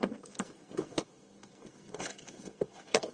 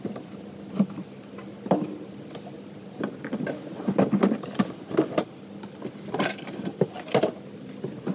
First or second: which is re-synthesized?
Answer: first